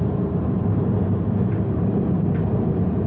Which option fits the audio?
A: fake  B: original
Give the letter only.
A